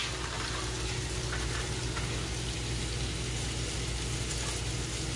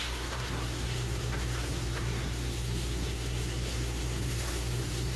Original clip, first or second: first